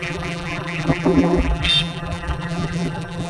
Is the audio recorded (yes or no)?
no